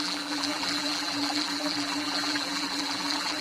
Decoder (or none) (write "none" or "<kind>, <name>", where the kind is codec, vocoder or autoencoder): vocoder, BigVGAN v2